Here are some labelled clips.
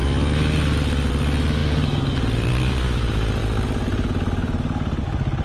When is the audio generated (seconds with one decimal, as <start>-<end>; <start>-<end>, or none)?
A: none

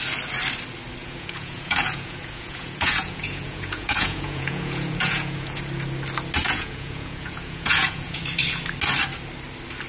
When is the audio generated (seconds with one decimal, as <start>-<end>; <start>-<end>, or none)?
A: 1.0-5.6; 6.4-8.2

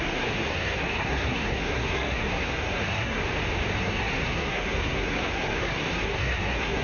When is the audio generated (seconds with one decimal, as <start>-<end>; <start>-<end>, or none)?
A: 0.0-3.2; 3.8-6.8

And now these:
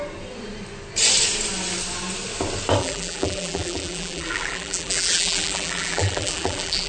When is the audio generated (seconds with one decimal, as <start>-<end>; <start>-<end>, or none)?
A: 2.8-6.9